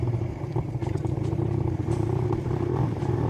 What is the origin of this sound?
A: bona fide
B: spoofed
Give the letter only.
B